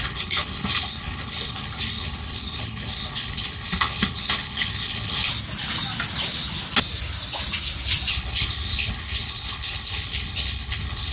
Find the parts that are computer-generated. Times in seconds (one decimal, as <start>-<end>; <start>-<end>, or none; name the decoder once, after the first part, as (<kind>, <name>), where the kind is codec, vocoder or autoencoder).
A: 0.0-5.3 (codec, HILCodec); 8.1-11.1